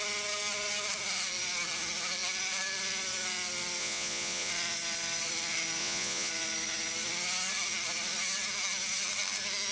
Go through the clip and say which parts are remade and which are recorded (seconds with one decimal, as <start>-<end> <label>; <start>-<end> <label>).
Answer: 0.0-3.8 recorded; 3.8-4.5 remade; 4.5-5.8 recorded; 5.8-6.3 remade; 6.3-9.7 recorded